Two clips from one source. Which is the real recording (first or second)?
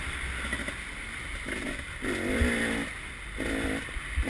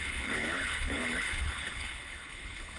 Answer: first